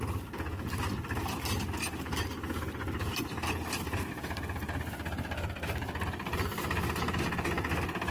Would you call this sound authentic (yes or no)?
yes